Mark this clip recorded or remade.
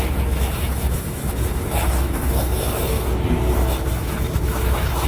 remade